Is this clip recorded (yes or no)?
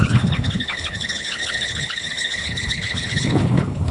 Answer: no